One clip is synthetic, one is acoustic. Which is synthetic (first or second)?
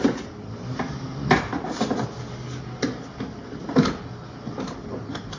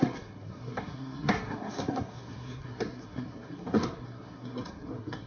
second